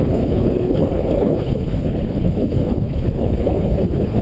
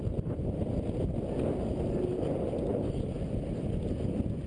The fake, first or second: first